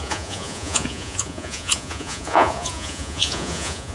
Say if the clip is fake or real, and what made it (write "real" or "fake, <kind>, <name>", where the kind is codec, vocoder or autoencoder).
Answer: fake, vocoder, Vocos